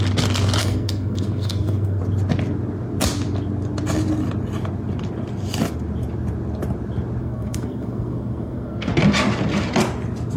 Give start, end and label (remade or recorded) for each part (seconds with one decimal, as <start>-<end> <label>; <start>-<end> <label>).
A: 0.0-0.6 recorded; 0.6-2.0 remade; 2.0-7.2 recorded; 7.2-8.9 remade; 8.9-10.4 recorded

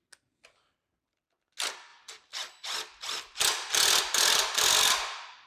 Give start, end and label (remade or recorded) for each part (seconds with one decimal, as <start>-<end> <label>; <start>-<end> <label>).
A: 0.0-5.5 recorded

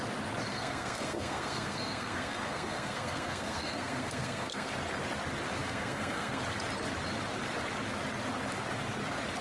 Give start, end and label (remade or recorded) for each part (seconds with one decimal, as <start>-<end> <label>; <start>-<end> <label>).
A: 0.0-0.5 recorded; 0.5-4.7 remade; 4.7-5.6 recorded; 5.6-6.4 remade; 6.4-9.4 recorded

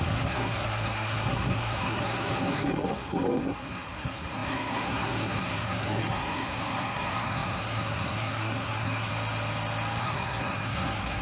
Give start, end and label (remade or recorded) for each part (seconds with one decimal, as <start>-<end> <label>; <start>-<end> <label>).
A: 0.0-9.1 remade; 9.1-10.0 recorded; 10.0-11.2 remade

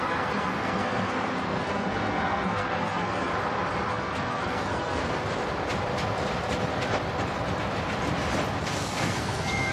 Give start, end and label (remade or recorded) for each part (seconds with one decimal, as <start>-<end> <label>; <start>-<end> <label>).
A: 0.0-3.3 remade; 3.3-3.9 recorded; 3.9-5.0 remade; 5.0-8.6 recorded; 8.6-9.7 remade

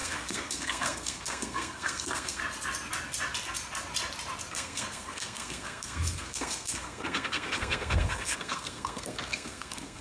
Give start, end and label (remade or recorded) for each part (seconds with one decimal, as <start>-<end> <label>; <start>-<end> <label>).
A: 0.0-2.4 remade; 2.4-4.5 recorded; 4.5-10.0 remade

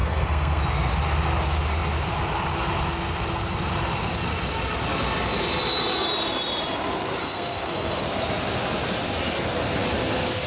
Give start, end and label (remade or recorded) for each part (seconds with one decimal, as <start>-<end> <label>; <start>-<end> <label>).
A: 0.0-0.6 remade; 0.6-7.2 recorded; 7.2-8.0 remade; 8.0-10.5 recorded